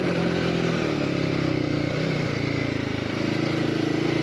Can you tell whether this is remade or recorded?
recorded